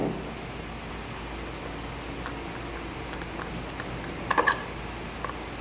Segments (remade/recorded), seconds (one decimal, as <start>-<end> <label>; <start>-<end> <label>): 0.0-5.6 recorded